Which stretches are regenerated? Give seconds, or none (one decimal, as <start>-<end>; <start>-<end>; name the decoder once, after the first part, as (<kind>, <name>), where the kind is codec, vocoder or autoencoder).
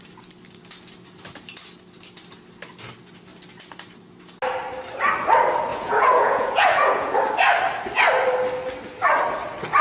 5.7-7.2 (vocoder, Vocos)